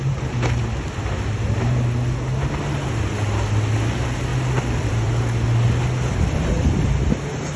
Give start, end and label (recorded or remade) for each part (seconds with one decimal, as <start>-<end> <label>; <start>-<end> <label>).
0.0-4.3 recorded; 4.3-5.1 remade; 5.1-7.6 recorded